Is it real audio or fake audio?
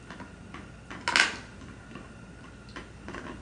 real